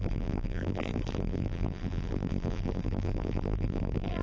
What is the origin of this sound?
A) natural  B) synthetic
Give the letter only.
B